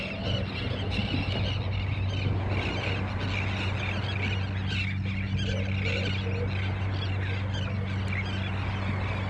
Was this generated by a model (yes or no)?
no